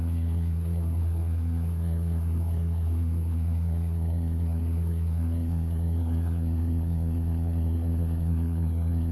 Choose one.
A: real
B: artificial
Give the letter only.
B